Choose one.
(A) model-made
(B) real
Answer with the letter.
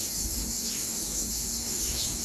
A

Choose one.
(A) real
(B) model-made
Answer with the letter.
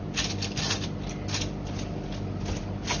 A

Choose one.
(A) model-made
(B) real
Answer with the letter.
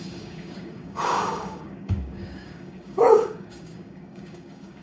A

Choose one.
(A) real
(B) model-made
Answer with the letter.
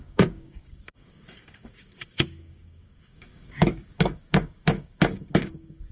B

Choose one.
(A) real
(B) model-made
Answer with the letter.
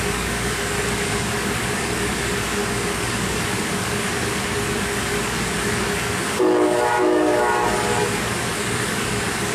B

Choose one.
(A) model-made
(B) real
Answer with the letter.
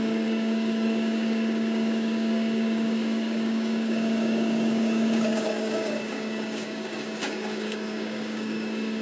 A